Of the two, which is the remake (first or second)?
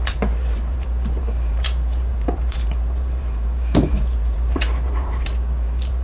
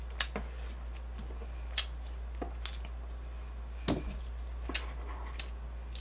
first